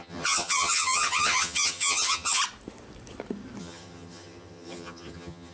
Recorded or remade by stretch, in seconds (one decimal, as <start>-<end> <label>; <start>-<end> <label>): 0.0-2.4 remade; 2.4-3.6 recorded; 3.6-5.5 remade